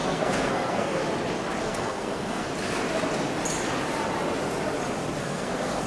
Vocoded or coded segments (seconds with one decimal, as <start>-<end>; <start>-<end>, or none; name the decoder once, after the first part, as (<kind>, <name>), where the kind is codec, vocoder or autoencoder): 0.0-1.0 (codec, SNAC); 1.6-2.5; 5.2-5.9